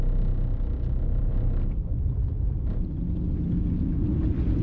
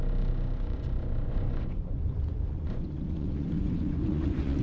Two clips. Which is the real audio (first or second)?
first